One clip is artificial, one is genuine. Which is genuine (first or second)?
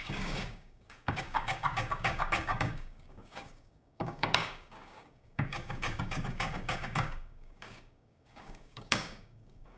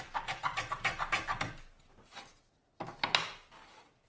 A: second